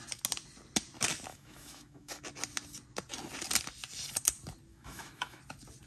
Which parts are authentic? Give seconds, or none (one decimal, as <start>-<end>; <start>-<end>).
0.0-1.3; 2.2-4.7; 5.4-5.9